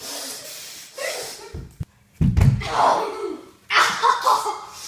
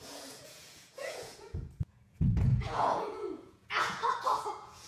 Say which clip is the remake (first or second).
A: second